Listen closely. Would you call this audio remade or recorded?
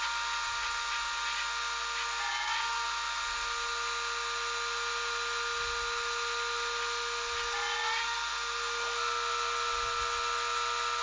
recorded